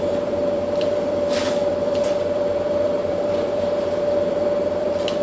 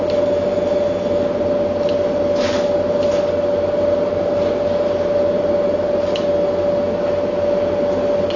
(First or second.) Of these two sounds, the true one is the second